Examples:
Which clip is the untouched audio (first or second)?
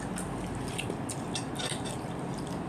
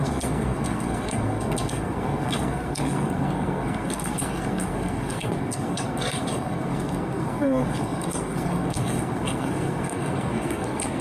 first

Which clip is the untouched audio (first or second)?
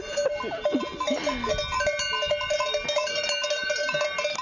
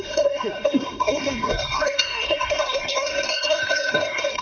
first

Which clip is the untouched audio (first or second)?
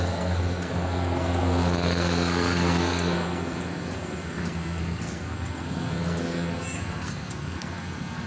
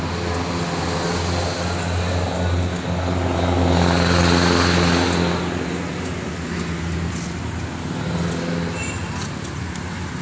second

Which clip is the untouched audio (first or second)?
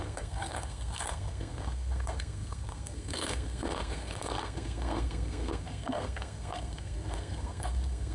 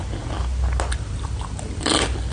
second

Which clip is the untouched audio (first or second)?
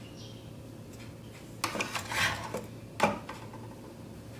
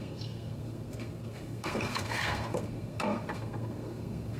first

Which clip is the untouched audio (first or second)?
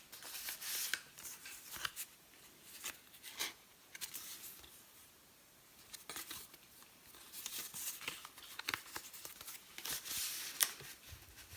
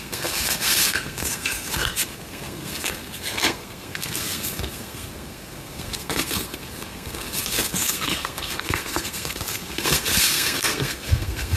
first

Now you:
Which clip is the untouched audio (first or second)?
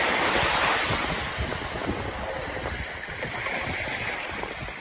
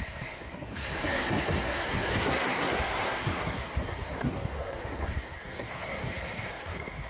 first